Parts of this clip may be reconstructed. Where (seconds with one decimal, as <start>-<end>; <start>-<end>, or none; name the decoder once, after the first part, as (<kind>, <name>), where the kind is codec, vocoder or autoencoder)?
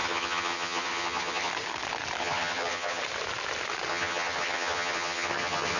0.0-1.5 (vocoder, HiFi-GAN); 2.2-3.0; 3.9-5.8